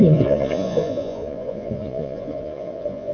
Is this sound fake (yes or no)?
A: yes